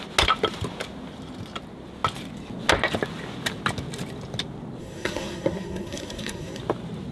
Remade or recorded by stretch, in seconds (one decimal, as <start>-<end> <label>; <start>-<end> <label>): 0.0-4.8 recorded; 4.8-6.6 remade; 6.6-7.1 recorded